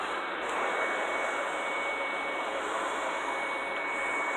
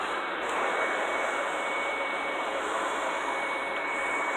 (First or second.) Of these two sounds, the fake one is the second